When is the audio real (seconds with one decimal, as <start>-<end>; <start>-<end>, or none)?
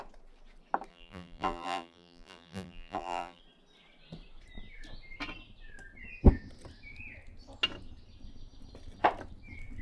0.0-0.9; 3.4-9.8